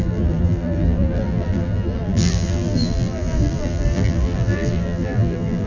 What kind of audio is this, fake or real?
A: fake